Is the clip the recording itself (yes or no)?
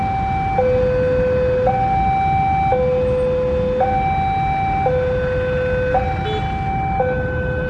yes